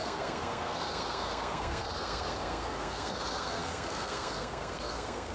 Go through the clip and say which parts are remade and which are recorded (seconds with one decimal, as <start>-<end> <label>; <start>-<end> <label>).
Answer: 0.0-5.3 remade